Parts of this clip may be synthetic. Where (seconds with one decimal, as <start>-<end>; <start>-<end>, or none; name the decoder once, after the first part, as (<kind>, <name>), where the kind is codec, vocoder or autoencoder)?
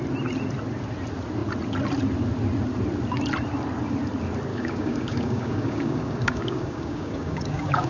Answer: 4.5-7.9 (codec, DAC)